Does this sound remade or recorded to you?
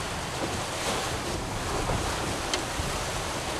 recorded